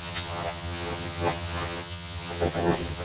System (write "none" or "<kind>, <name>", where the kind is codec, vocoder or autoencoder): vocoder, HiFi-GAN